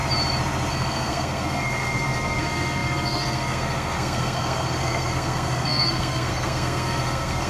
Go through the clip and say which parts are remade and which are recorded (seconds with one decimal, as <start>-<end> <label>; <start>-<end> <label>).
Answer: 0.0-0.7 recorded; 0.7-7.5 remade